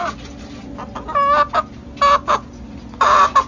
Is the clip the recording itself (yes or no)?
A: yes